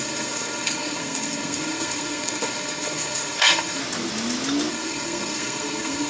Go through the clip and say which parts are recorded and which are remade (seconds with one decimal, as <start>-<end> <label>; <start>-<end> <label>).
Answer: 0.0-3.8 remade; 3.8-4.7 recorded; 4.7-6.1 remade